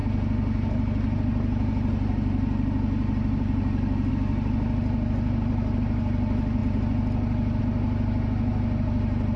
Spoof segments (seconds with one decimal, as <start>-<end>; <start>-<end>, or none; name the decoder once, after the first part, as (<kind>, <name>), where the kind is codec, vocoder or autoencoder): none